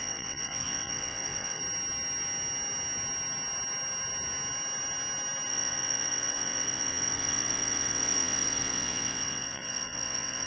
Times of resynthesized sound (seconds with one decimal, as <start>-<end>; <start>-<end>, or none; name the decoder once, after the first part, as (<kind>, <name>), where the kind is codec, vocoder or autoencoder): 0.0-1.6 (vocoder, WaveNeXt); 5.5-10.5